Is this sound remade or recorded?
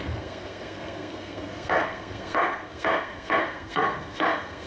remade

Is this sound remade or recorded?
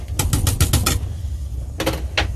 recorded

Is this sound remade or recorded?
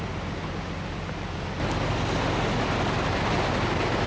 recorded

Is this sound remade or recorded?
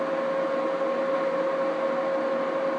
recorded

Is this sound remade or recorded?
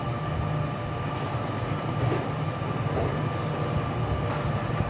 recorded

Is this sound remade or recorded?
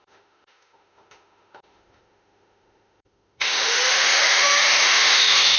remade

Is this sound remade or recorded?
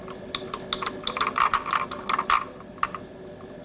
recorded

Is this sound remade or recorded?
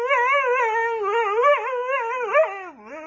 recorded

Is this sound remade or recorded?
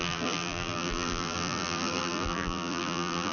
remade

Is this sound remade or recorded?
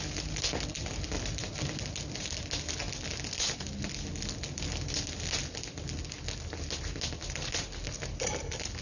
recorded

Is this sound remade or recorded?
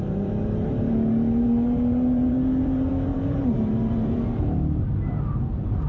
remade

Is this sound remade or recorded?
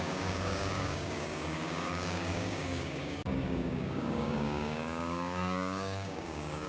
remade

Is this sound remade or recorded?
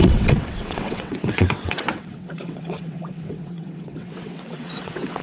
remade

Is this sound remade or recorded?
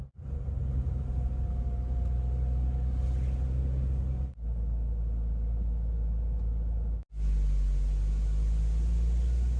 recorded